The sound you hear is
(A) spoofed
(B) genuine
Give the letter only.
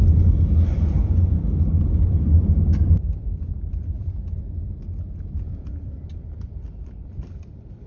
A